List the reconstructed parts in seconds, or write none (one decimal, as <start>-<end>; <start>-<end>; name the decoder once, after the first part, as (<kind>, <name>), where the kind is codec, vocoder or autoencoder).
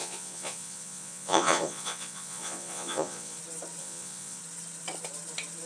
0.0-3.4 (vocoder, Vocos); 3.8-4.4